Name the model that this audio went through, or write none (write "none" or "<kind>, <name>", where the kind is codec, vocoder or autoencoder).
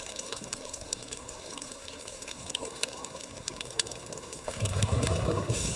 codec, SNAC